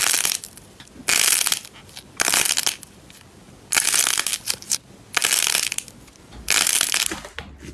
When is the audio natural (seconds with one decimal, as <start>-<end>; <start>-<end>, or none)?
0.0-7.7